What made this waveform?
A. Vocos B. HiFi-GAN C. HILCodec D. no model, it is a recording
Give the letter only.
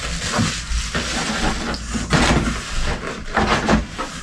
D